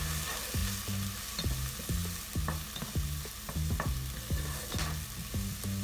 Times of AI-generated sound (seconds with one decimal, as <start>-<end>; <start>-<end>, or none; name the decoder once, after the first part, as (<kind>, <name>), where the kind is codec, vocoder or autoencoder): none